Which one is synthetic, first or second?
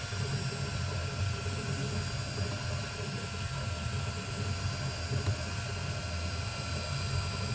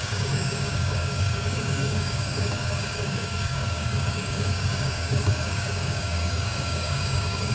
second